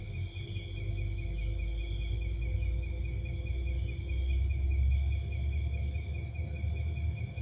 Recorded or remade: recorded